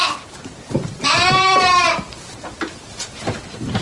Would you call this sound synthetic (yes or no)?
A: yes